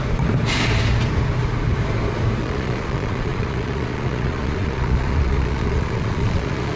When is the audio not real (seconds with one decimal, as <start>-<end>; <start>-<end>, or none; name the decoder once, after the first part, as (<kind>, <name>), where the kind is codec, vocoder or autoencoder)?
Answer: 2.4-6.8 (vocoder, Vocos)